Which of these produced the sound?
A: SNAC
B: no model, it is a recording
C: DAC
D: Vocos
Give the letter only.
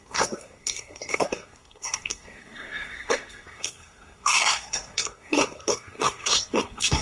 A